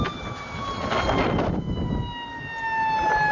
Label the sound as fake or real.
real